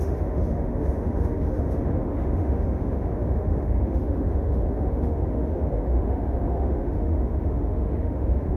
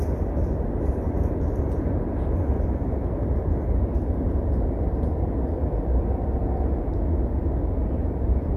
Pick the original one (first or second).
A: second